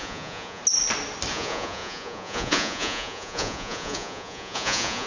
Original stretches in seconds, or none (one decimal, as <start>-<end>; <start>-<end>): 0.6-1.3